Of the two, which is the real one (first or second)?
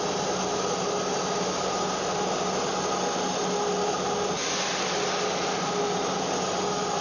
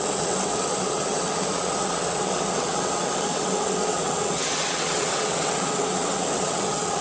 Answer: first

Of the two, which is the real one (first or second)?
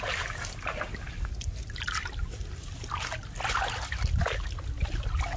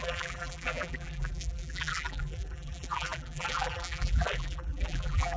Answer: first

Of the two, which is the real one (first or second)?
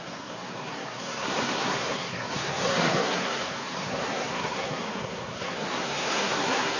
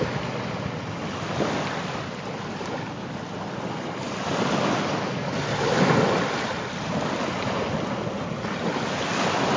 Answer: second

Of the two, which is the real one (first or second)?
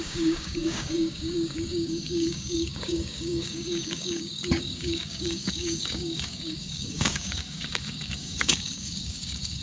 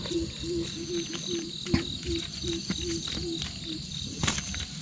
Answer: second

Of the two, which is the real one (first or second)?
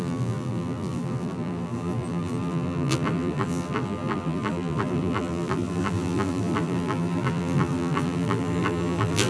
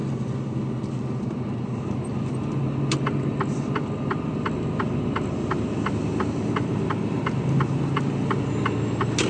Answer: second